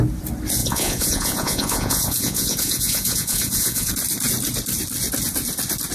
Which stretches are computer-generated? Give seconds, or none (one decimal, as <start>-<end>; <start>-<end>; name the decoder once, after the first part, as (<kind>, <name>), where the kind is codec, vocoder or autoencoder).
0.6-3.9 (vocoder, Vocos)

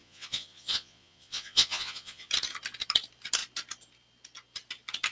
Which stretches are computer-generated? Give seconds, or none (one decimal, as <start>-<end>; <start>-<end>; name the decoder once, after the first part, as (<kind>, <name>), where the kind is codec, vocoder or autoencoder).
0.0-2.3 (vocoder, Vocos)

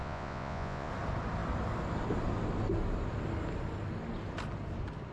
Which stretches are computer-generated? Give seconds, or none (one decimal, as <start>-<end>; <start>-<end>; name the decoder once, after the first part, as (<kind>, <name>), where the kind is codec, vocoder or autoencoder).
0.0-0.9 (vocoder, Vocos)

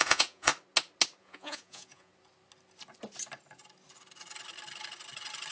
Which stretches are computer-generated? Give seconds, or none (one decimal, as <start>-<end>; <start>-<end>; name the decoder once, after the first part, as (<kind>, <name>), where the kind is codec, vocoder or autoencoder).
0.0-0.5 (vocoder, Vocos); 1.2-2.1